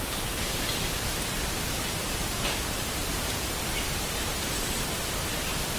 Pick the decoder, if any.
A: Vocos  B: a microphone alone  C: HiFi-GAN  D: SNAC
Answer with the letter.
B